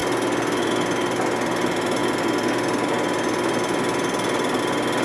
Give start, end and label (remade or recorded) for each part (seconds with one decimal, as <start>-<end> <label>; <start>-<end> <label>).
0.0-5.0 recorded